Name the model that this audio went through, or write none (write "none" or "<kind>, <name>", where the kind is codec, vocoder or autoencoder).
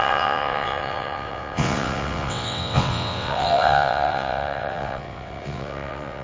vocoder, WaveNeXt